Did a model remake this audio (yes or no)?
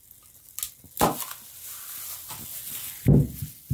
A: no